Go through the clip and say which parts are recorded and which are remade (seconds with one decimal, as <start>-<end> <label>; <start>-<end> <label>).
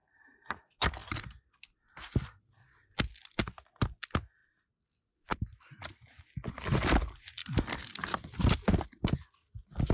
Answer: 0.0-0.6 remade; 0.6-1.0 recorded; 1.0-1.8 remade; 1.8-4.4 recorded; 4.4-6.5 remade; 6.5-7.4 recorded; 7.4-8.4 remade; 8.4-9.9 recorded